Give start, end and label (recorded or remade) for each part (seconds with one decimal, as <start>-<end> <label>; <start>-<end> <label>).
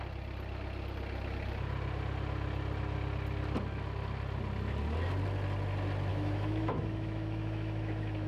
0.0-6.1 recorded; 6.1-8.3 remade